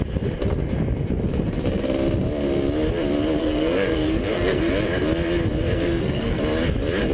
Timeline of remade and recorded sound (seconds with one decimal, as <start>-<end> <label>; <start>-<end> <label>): 0.0-3.4 recorded; 3.4-4.7 remade; 4.7-5.6 recorded; 5.6-6.4 remade; 6.4-7.1 recorded